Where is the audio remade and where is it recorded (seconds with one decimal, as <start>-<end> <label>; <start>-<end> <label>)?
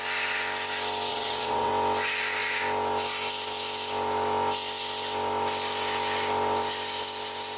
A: 0.0-1.1 recorded; 1.1-1.7 remade; 1.7-7.6 recorded